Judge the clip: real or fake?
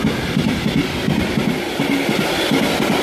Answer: real